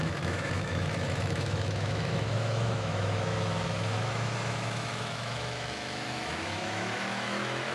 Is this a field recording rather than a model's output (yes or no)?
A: no